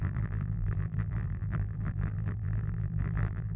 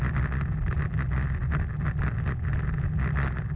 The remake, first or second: first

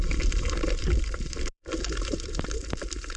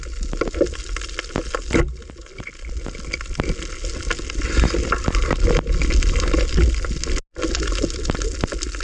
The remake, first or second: first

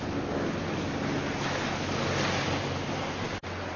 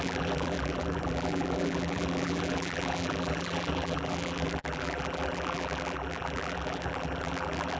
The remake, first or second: second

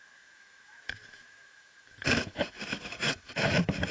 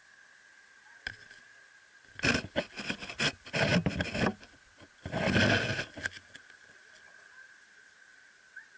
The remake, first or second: first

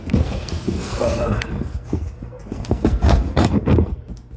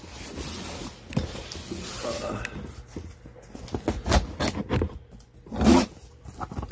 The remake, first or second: first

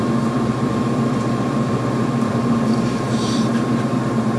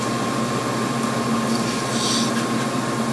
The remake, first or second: first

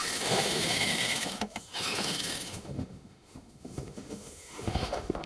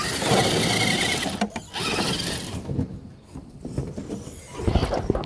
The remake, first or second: first